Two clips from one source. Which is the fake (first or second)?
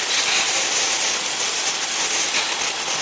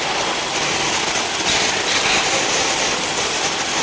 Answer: second